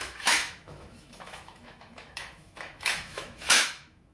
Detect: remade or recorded remade